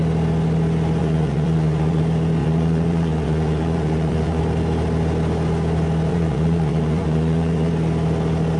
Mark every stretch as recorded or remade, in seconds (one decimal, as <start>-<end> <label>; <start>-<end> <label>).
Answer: 0.0-1.0 recorded; 1.0-2.0 remade; 2.0-2.4 recorded; 2.4-4.4 remade; 4.4-6.1 recorded; 6.1-7.7 remade; 7.7-8.6 recorded